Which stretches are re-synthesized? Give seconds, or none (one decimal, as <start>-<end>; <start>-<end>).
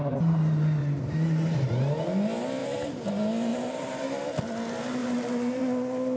0.8-1.7; 2.6-3.1; 3.5-4.2; 5.0-5.6